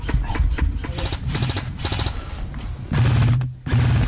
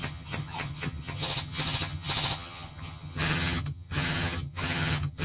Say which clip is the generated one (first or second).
second